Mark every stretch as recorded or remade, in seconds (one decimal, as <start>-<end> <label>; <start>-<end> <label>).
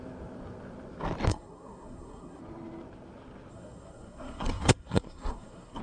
0.0-1.3 recorded; 1.3-2.4 remade; 2.4-3.5 recorded; 3.5-5.8 remade